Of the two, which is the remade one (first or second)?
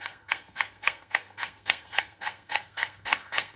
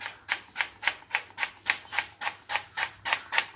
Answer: first